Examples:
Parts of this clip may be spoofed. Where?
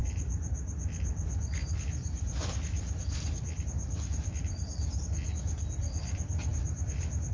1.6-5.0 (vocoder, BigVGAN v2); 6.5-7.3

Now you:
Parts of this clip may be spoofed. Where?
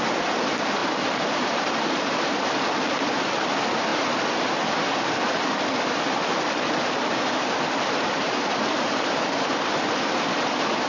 0.8-2.2 (vocoder, BigVGAN v2)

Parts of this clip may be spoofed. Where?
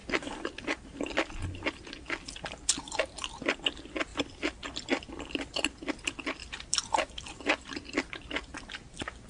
4.1-6.0 (vocoder, BigVGAN v2); 6.4-7.6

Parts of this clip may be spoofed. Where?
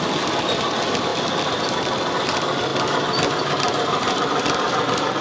1.1-1.6 (vocoder, BigVGAN v2); 2.7-5.2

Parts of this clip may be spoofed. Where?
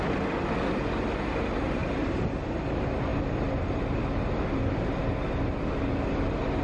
none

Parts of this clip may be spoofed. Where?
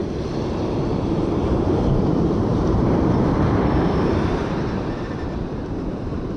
0.0-1.9 (vocoder, BigVGAN v2); 2.5-6.4